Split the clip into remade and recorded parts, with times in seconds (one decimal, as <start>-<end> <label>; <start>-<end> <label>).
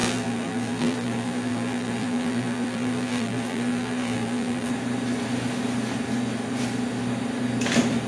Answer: 0.0-4.7 remade; 4.7-8.1 recorded